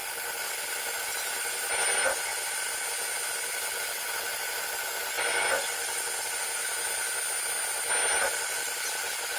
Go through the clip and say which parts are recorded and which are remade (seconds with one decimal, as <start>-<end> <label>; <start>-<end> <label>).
0.0-9.4 recorded